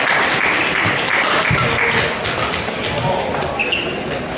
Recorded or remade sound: recorded